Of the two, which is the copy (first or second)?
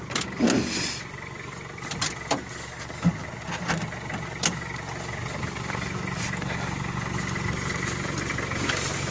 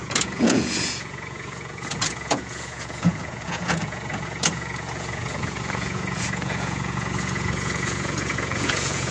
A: second